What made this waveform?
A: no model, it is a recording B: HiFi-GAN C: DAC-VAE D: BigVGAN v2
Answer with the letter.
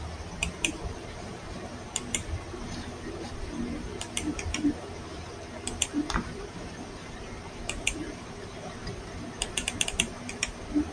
D